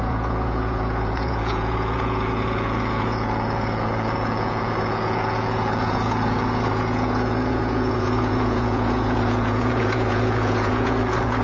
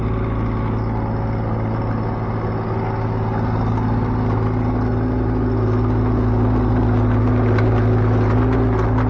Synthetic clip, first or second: first